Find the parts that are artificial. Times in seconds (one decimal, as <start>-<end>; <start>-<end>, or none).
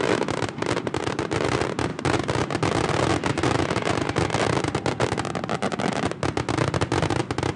none